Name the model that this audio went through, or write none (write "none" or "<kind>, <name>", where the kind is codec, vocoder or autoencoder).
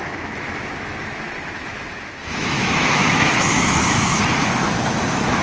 autoencoder, DAC-VAE